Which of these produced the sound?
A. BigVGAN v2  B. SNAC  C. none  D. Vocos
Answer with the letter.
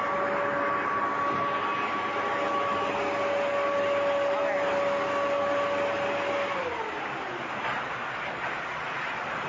C